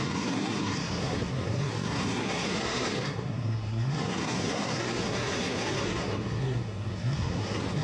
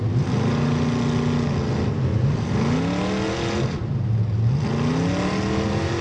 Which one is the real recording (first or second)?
second